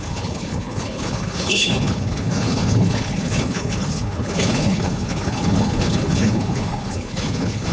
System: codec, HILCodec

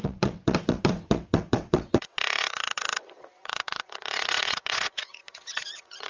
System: vocoder, WaveNeXt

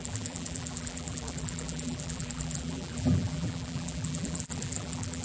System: vocoder, BigVGAN v2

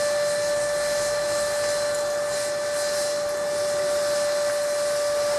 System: none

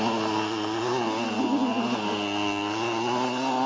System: none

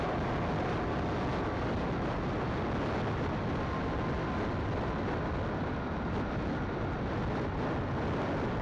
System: none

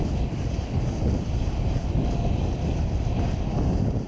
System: none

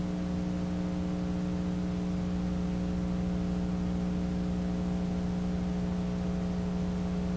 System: none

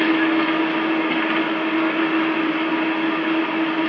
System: none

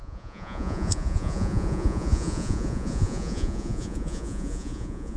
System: vocoder, Vocos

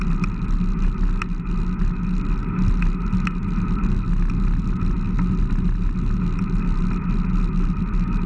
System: none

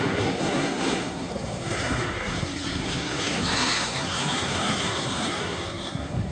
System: codec, SNAC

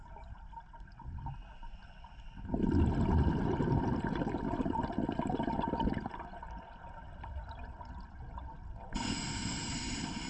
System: none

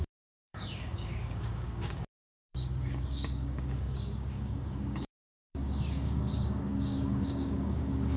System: codec, DAC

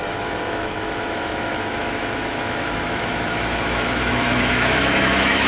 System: autoencoder, DAC-VAE